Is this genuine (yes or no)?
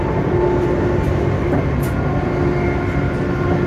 yes